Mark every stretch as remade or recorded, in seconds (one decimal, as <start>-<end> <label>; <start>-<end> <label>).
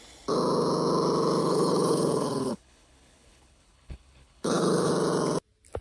0.0-1.4 recorded; 1.4-4.9 remade; 4.9-5.8 recorded